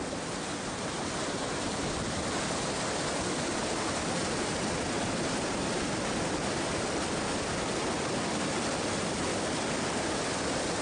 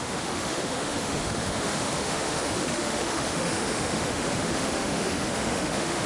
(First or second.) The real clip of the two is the first